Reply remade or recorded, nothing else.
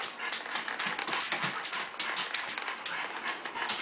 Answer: recorded